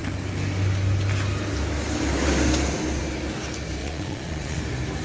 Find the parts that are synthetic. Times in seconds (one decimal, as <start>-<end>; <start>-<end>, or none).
3.8-4.6